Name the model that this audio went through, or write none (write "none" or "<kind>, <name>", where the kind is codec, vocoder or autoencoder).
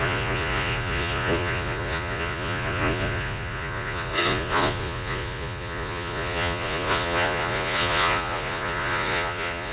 vocoder, Vocos